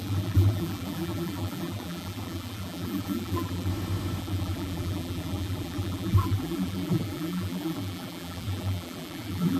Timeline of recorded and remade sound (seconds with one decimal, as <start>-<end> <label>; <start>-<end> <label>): 0.0-3.7 remade; 3.7-4.2 recorded; 4.2-9.6 remade